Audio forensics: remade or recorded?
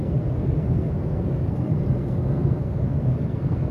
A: remade